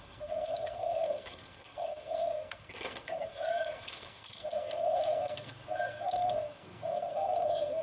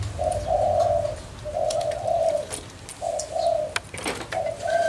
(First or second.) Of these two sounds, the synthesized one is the first